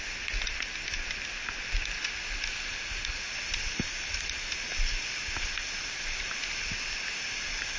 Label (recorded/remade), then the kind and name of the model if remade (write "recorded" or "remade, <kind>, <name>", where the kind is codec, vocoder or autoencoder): recorded